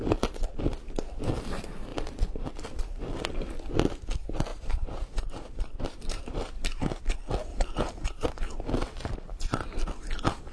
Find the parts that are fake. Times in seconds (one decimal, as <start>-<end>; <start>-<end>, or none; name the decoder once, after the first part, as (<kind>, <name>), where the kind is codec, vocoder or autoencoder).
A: 4.5-7.0 (vocoder, BigVGAN v2); 7.5-8.3